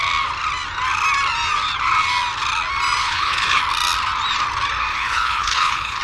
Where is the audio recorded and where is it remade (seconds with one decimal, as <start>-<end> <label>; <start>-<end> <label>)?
0.0-3.0 recorded; 3.0-3.6 remade; 3.6-4.9 recorded; 4.9-6.0 remade